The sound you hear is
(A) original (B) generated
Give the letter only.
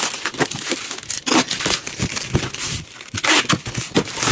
A